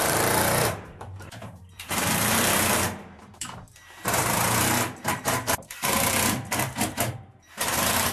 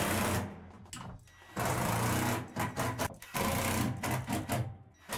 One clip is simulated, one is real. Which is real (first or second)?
second